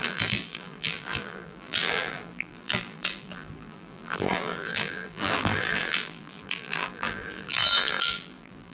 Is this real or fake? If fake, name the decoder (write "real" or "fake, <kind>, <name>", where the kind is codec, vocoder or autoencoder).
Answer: fake, vocoder, BigVGAN v2